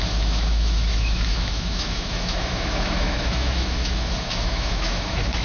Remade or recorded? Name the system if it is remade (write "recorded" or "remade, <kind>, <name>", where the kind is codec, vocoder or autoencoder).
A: remade, autoencoder, DAC-VAE